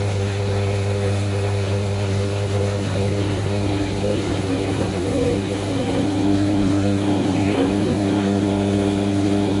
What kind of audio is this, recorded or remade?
remade